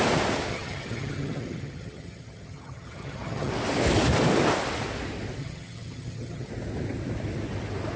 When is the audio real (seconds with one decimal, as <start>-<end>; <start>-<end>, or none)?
0.0-0.5; 3.5-5.4; 6.5-8.0

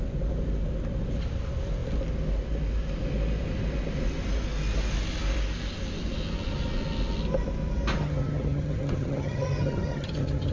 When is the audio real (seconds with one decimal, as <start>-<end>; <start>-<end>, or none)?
0.0-8.0

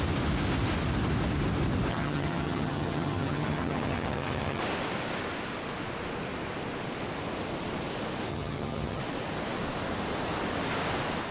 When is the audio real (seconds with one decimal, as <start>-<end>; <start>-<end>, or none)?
0.0-1.9; 4.6-8.3; 9.0-11.3

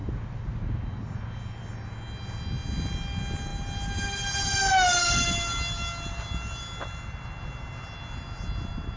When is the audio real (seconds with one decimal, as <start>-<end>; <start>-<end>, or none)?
0.0-9.0

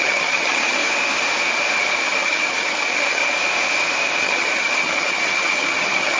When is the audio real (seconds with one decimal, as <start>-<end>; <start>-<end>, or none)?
0.8-2.0; 3.2-4.2